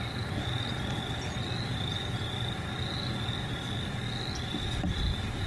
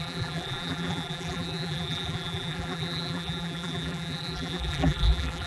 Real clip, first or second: first